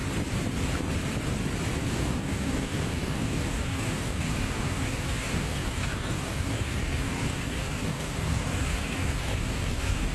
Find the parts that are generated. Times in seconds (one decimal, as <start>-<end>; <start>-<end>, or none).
1.9-10.1